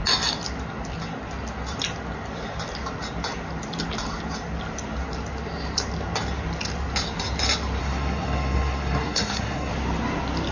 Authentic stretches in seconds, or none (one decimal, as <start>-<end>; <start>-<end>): 0.0-7.8; 9.7-10.5